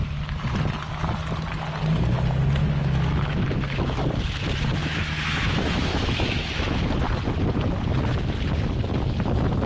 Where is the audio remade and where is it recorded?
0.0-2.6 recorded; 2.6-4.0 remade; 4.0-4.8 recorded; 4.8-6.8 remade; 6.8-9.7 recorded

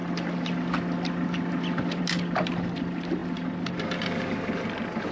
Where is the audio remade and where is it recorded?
0.0-5.1 recorded

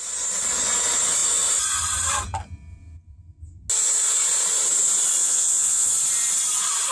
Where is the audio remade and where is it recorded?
0.0-5.2 recorded; 5.2-5.9 remade; 5.9-6.9 recorded

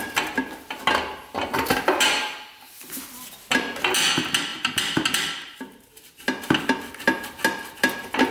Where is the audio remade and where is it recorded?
0.0-8.3 recorded

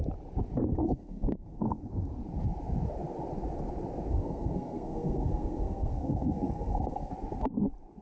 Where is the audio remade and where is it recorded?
0.0-0.8 recorded; 0.8-1.8 remade; 1.8-4.1 recorded; 4.1-7.1 remade; 7.1-8.0 recorded

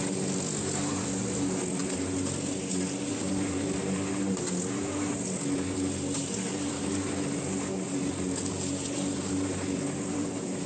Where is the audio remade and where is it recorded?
0.0-10.7 recorded

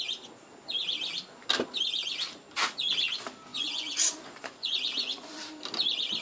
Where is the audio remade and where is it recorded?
0.0-3.5 recorded; 3.5-5.4 remade; 5.4-6.2 recorded